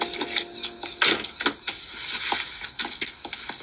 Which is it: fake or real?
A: real